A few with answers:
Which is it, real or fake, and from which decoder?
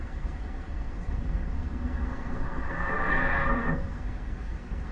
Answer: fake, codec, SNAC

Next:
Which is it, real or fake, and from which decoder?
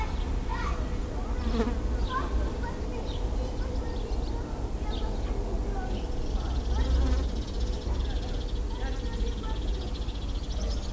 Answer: real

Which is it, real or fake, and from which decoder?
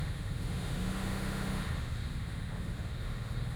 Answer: fake, autoencoder, DAC-VAE